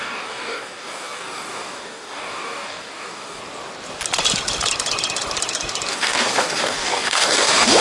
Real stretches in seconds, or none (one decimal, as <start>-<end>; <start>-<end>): 3.4-5.9